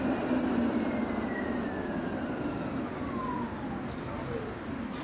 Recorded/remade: recorded